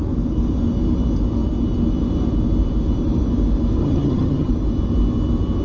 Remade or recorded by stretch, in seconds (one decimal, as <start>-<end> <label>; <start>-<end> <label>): 0.0-3.8 recorded; 3.8-4.5 remade; 4.5-5.6 recorded